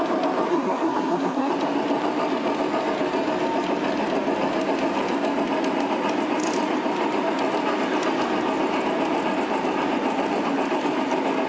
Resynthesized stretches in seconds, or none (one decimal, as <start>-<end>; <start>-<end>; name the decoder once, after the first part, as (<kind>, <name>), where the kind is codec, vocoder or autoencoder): 0.5-1.5 (codec, SNAC)